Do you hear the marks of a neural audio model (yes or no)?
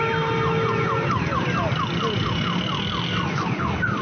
no